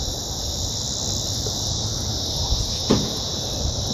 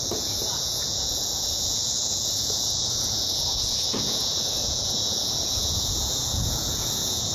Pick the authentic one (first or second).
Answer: first